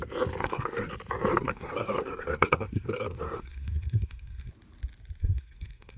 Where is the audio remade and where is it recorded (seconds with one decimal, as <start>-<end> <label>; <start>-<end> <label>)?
0.0-0.4 recorded; 0.4-0.9 remade; 0.9-1.3 recorded; 1.3-4.5 remade; 4.5-5.2 recorded; 5.2-6.0 remade